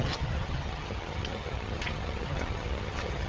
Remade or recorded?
remade